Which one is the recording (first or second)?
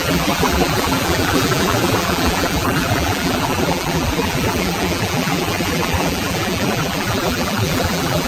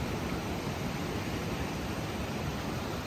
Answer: second